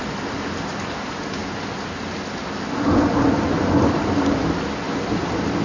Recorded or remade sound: recorded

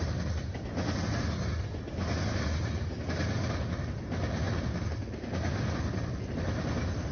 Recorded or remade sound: recorded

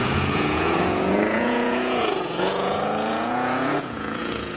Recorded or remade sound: remade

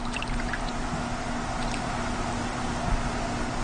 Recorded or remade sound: recorded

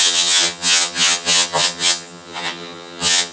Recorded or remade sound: remade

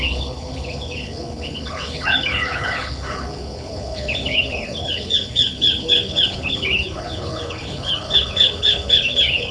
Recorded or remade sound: remade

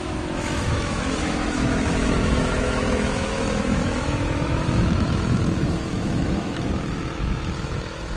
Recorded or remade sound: remade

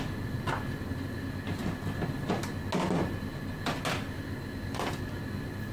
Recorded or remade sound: recorded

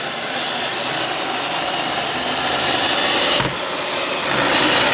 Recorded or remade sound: recorded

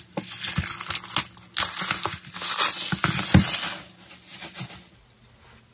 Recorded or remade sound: recorded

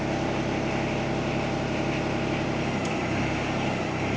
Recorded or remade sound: recorded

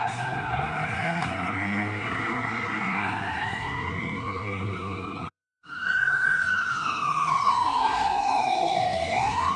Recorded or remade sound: remade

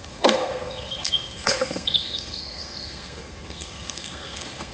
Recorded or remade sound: remade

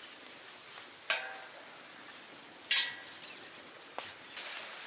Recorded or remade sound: recorded